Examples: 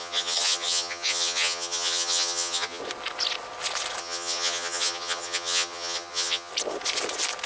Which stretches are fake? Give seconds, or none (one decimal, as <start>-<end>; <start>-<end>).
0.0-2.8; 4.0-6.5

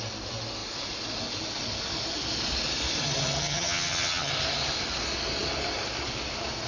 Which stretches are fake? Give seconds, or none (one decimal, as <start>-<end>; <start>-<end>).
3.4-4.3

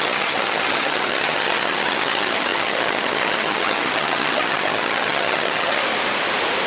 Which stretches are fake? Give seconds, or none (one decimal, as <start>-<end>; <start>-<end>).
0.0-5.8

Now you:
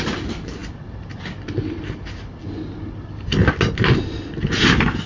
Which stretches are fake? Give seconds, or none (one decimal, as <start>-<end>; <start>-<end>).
none